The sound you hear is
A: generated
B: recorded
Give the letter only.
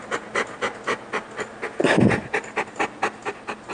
B